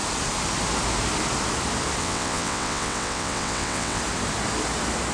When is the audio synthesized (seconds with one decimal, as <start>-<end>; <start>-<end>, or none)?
2.0-4.0